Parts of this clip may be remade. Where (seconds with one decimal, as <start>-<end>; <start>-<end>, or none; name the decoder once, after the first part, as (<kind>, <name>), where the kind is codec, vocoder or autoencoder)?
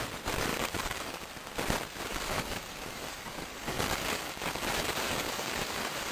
0.5-1.3 (codec, DAC); 2.1-6.1